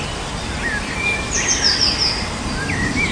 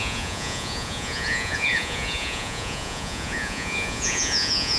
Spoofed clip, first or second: second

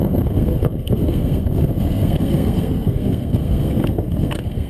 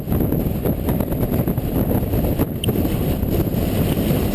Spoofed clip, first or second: first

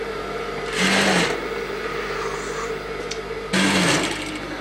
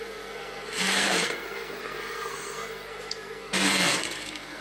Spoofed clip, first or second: second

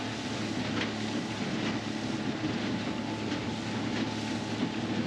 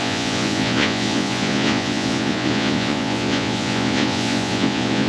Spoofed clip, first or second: second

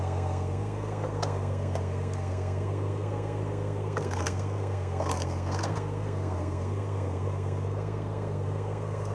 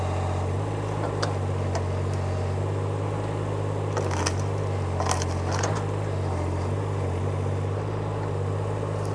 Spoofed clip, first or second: first